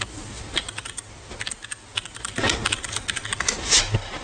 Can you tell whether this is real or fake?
real